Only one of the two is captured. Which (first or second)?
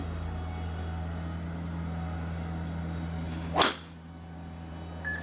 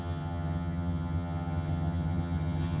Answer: first